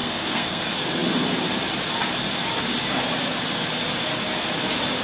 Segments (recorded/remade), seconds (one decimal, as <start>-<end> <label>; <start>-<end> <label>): 0.0-0.6 remade; 0.6-5.0 recorded